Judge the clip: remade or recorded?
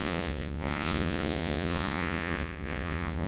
remade